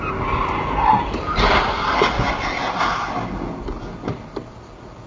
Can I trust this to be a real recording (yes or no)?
yes